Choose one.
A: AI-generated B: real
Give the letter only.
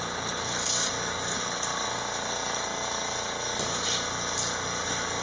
B